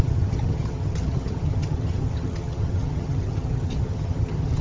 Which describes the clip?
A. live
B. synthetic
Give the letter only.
B